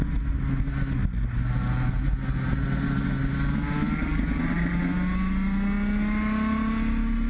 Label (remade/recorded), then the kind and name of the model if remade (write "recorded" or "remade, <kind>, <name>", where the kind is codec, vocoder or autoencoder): recorded